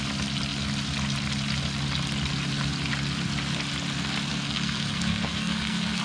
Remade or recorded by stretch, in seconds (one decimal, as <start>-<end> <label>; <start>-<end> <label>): 0.0-4.3 recorded; 4.3-6.0 remade